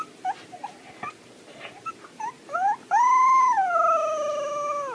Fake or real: real